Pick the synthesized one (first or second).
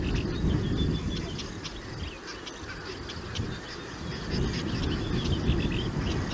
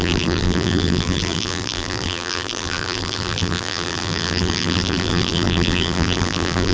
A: second